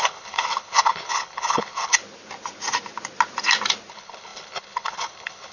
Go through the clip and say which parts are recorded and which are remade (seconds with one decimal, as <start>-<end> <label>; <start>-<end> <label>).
0.0-2.0 remade; 2.0-3.9 recorded; 3.9-5.5 remade